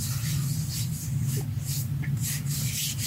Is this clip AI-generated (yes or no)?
no